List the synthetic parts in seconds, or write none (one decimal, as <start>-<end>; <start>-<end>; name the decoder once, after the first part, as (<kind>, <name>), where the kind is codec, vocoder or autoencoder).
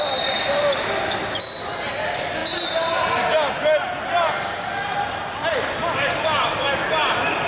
none